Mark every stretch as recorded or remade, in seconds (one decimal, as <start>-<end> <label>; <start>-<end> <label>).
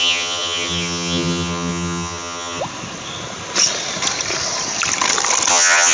0.0-2.6 remade; 2.6-5.5 recorded; 5.5-5.9 remade